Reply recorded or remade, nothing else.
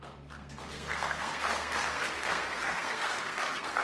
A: remade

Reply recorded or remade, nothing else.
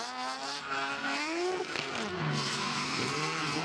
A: remade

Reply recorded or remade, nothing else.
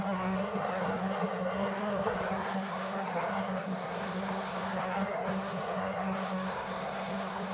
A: remade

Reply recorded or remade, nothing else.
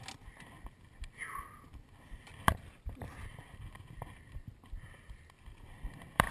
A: recorded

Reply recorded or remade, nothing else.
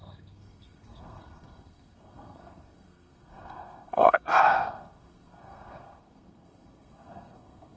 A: remade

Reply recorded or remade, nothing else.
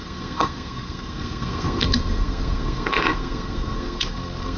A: remade